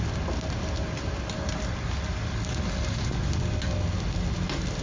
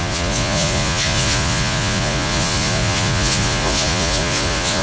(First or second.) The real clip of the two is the first